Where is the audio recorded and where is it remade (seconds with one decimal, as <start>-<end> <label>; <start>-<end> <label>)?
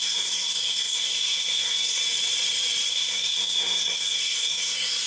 0.0-2.0 remade; 2.0-2.9 recorded; 2.9-5.1 remade